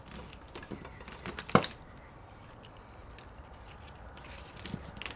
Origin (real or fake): real